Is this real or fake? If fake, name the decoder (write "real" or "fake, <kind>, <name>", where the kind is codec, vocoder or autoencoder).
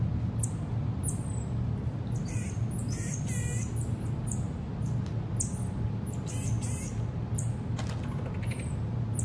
real